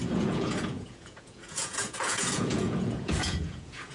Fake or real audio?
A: fake